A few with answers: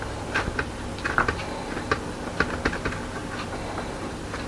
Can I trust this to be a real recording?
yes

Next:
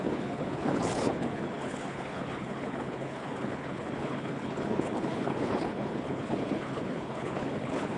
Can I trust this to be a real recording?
no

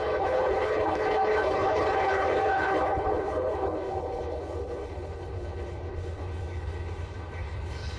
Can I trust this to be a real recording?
no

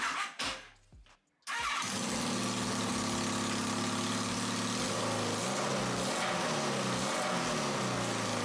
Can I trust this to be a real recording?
yes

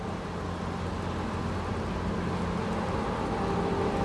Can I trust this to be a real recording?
yes